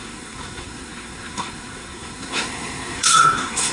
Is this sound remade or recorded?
remade